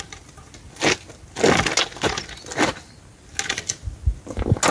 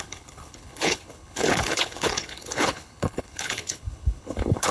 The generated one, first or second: second